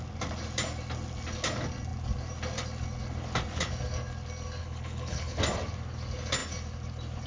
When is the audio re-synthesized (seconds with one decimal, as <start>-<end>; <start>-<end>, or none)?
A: 4.6-5.4

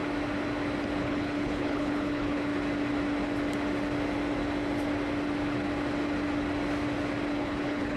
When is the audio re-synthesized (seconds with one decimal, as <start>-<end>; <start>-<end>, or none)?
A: 1.0-2.5; 7.3-8.0

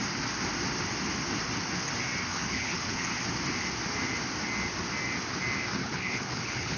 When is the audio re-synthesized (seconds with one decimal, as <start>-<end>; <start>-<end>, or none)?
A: 2.3-3.1; 5.8-6.8